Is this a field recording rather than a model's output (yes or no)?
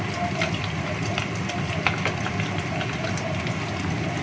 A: yes